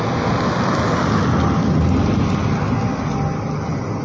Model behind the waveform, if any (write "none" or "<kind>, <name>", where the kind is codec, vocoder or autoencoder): none